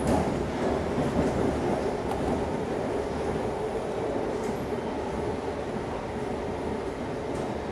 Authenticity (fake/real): real